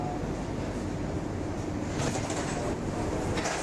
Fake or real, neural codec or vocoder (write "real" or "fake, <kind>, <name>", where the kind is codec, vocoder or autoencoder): real